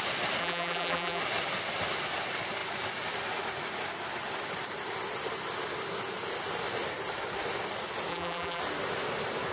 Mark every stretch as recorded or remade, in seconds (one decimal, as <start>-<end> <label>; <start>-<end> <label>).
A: 0.0-0.4 recorded; 0.4-1.2 remade; 1.2-8.1 recorded; 8.1-8.6 remade; 8.6-9.5 recorded